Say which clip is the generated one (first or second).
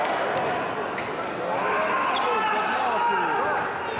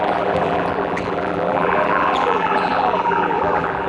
second